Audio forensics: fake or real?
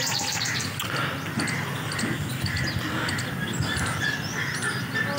real